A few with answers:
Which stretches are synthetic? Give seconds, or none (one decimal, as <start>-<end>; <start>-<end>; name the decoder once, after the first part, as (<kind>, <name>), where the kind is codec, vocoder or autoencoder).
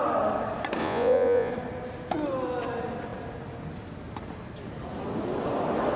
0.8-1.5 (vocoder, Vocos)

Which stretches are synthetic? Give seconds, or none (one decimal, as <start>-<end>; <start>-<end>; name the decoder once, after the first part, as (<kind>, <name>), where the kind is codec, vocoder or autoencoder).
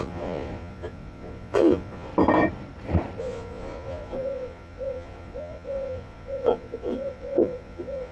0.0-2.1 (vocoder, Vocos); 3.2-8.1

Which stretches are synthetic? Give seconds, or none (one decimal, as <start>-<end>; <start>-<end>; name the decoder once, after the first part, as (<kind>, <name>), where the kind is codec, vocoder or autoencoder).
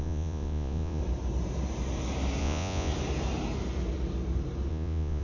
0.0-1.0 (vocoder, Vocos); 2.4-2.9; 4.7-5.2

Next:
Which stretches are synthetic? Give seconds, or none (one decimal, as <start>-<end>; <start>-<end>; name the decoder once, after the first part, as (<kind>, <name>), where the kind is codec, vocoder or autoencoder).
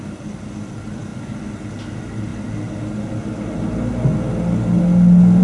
none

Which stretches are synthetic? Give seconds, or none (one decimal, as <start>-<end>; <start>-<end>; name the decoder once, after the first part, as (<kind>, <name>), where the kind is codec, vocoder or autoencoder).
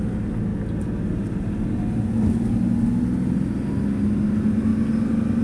none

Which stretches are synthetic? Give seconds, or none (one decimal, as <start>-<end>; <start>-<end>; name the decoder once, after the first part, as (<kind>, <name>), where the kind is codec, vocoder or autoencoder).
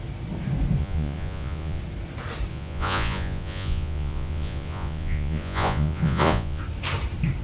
0.8-1.8 (vocoder, Vocos); 2.5-6.6